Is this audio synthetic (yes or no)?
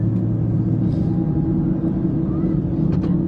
no